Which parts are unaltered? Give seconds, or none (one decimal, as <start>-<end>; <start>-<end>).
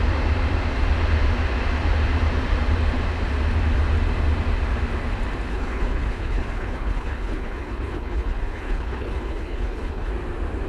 0.0-5.5; 10.1-10.7